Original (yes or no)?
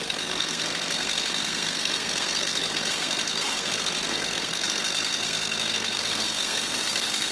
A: no